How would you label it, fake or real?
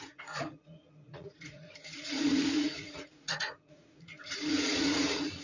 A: fake